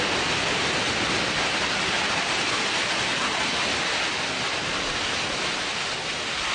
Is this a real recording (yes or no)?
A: yes